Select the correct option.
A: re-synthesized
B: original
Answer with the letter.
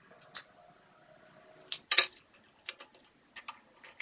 B